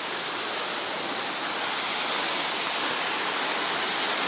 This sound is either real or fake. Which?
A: real